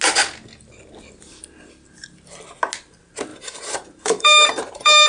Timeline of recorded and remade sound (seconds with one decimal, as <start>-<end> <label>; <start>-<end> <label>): 0.0-3.3 recorded; 3.3-5.1 remade